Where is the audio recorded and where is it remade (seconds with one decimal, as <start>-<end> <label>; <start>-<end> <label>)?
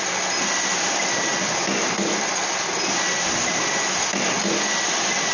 0.0-5.3 recorded